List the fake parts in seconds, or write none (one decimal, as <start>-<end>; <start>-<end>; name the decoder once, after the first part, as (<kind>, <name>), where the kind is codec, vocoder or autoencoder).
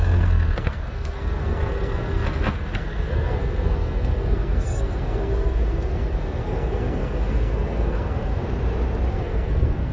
0.0-8.4 (codec, SNAC); 9.1-9.9